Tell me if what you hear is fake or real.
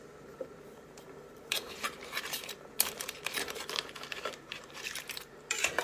fake